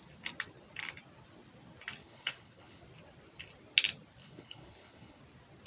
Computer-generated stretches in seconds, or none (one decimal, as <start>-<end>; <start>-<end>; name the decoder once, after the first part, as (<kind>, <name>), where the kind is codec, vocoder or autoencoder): 2.0-2.8 (codec, HILCodec); 4.2-5.2